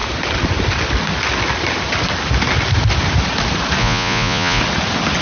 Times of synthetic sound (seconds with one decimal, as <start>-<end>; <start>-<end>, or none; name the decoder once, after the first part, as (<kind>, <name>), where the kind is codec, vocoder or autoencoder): 3.8-4.6 (vocoder, Vocos)